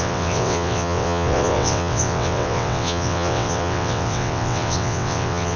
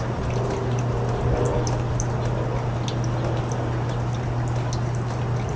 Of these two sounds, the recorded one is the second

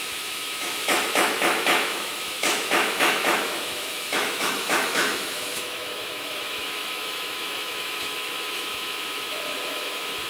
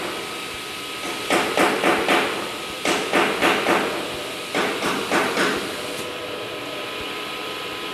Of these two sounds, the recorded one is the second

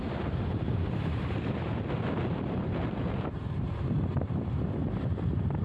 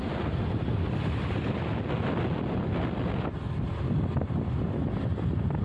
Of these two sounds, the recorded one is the second